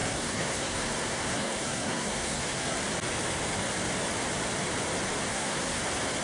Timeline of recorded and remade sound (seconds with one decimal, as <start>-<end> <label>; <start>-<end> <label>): 0.0-2.8 remade; 2.8-5.3 recorded; 5.3-5.8 remade; 5.8-6.2 recorded